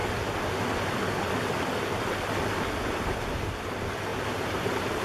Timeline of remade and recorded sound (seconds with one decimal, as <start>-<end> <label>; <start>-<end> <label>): 0.0-4.1 recorded; 4.1-5.0 remade

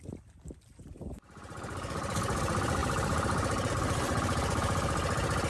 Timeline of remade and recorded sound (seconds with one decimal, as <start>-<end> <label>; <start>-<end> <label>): 0.0-2.8 recorded; 2.8-3.7 remade; 3.7-5.5 recorded

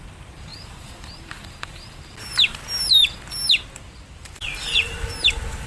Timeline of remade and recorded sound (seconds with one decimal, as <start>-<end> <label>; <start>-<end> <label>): 0.0-0.5 recorded; 0.5-2.0 remade; 2.0-5.7 recorded

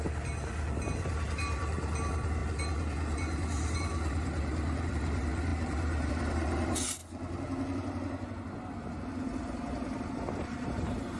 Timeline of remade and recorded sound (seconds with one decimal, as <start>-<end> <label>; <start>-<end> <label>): 0.0-7.0 remade; 7.0-10.1 recorded; 10.1-11.2 remade